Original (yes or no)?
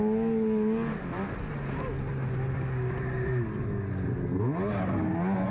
yes